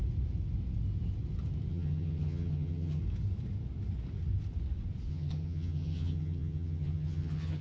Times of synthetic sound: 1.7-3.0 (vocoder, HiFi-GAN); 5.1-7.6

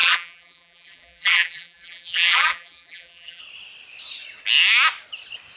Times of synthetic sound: 0.0-3.4 (vocoder, BigVGAN v2)

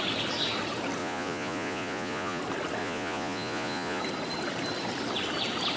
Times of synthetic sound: 1.0-2.4 (vocoder, Vocos); 2.8-4.0

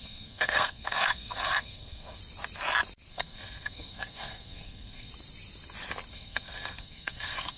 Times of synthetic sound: 0.0-2.2 (codec, SNAC); 3.1-5.1; 6.1-7.6

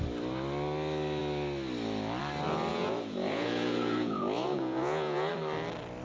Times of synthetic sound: 2.7-5.3 (vocoder, Vocos)

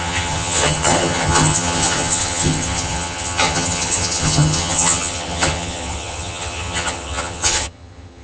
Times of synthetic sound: 0.0-8.2 (vocoder, HiFi-GAN)

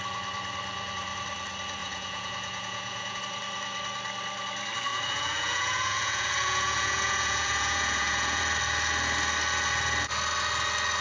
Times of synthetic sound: 1.8-3.2 (vocoder, Vocos); 4.9-8.4